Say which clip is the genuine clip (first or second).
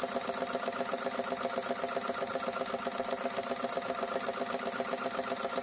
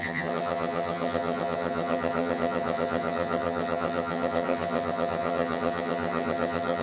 first